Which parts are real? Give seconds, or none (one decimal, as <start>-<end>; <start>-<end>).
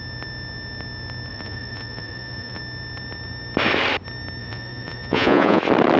0.0-1.3; 2.6-4.4; 5.6-6.0